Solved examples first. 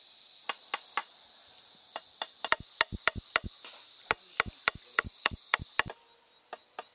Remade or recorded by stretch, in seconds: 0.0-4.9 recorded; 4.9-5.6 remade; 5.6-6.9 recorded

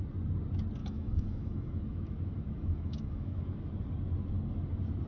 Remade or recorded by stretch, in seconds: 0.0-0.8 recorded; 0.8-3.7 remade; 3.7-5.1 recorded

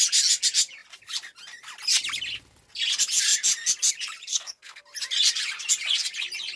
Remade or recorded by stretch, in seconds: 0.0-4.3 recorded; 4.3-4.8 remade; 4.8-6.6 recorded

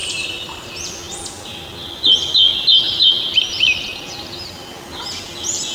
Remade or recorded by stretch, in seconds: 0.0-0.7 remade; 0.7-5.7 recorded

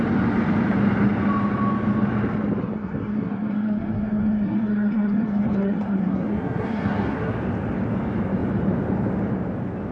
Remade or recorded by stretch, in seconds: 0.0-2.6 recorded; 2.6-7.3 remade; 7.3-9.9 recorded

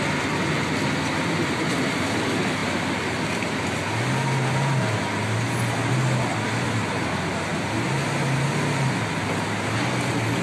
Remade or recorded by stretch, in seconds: 0.0-10.4 recorded

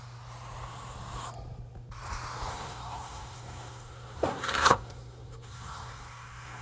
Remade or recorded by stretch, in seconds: 0.0-2.5 recorded; 2.5-6.6 remade